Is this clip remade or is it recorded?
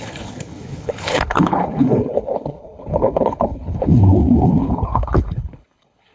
remade